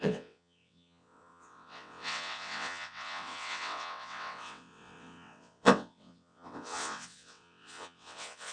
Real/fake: fake